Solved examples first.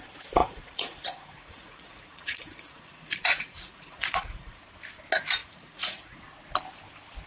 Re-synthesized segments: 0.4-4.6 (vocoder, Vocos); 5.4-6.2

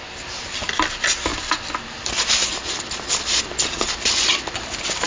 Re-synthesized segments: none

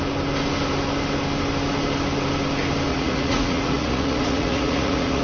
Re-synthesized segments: 2.9-5.2 (vocoder, Vocos)

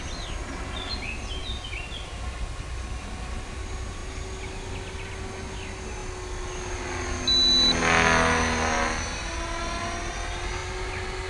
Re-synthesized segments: none

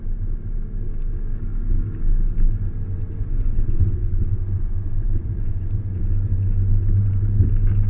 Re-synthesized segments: 2.9-5.7 (vocoder, Vocos)

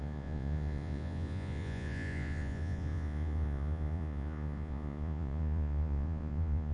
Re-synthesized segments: 0.0-6.7 (vocoder, Vocos)

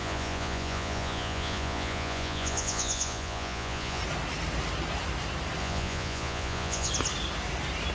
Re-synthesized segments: 0.0-4.0 (vocoder, Vocos); 5.6-6.9

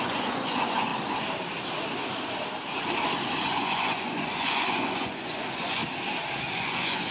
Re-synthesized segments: 0.0-0.9 (vocoder, Vocos); 3.4-5.8; 6.5-7.1